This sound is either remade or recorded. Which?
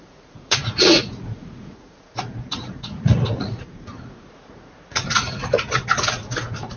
remade